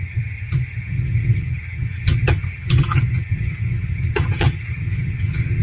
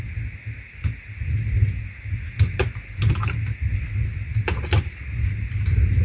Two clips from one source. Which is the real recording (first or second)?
second